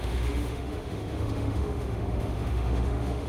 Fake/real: fake